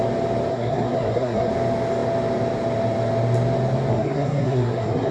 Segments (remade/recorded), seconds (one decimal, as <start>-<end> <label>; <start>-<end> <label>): 0.0-0.5 recorded; 0.5-1.5 remade; 1.5-3.9 recorded; 3.9-5.1 remade